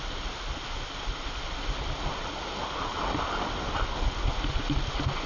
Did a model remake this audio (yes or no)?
no